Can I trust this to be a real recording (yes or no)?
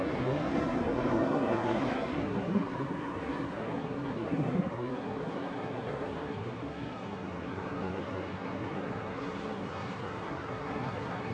no